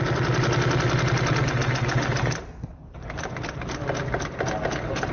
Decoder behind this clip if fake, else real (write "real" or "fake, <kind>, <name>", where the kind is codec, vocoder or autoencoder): real